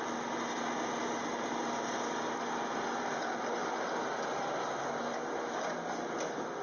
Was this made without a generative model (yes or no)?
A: yes